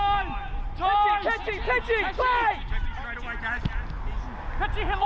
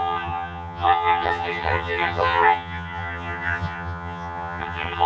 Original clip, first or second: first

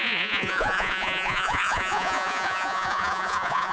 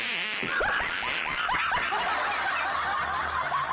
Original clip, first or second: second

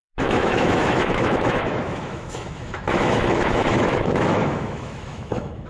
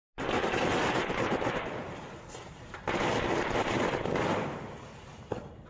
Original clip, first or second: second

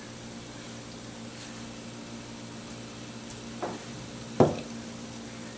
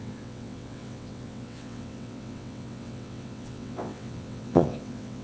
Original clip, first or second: first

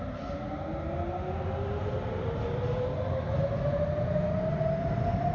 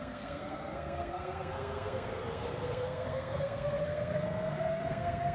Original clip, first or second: first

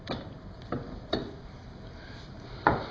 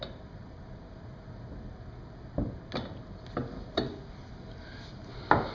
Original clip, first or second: second